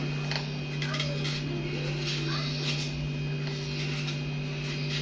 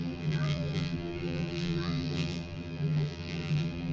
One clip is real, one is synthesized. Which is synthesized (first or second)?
second